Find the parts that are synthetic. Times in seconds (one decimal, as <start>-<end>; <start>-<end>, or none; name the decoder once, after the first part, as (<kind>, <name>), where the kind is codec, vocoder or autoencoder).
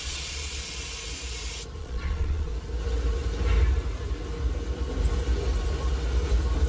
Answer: 0.0-0.8 (vocoder, Vocos); 1.8-2.5